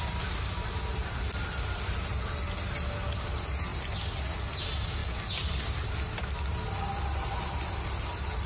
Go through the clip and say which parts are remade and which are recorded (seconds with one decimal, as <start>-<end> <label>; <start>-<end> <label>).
0.0-8.5 recorded